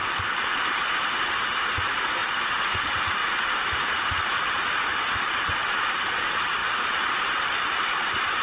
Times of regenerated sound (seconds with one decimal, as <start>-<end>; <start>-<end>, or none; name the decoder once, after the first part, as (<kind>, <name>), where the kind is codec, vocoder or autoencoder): 3.2-6.1 (vocoder, BigVGAN v2); 6.6-7.3